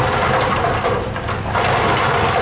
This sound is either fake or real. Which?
real